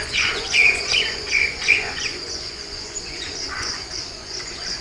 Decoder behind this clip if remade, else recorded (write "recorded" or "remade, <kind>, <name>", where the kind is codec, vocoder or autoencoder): remade, vocoder, Vocos